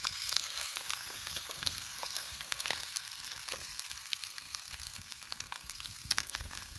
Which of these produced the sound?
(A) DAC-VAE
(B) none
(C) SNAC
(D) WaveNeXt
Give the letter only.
C